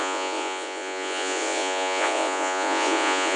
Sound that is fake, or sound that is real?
fake